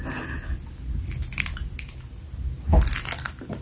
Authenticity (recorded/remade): recorded